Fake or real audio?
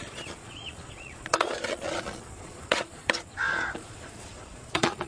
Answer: fake